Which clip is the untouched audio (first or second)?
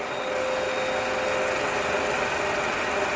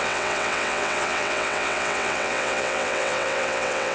first